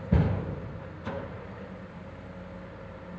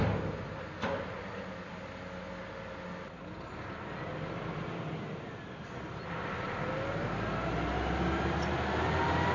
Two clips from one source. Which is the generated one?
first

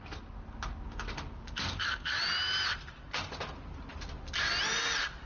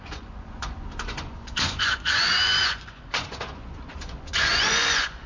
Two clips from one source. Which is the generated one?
second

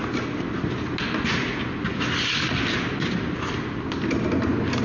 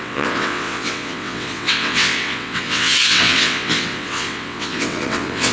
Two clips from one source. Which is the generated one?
second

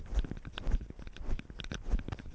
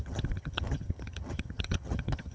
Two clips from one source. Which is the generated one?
second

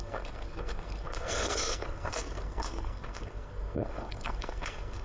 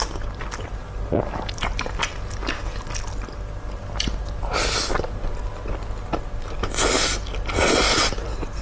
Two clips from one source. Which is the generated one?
first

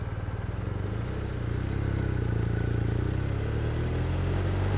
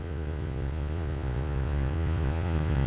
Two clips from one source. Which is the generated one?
second